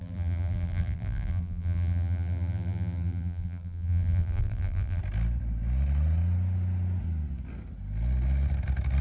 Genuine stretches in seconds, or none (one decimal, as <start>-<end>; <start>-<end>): 5.0-9.0